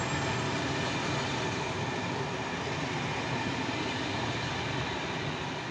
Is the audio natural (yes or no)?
yes